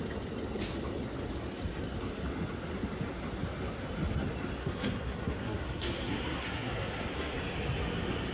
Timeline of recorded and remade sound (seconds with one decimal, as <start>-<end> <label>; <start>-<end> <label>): 0.0-4.6 recorded; 4.6-7.4 remade; 7.4-8.3 recorded